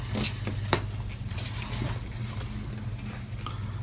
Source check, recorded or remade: recorded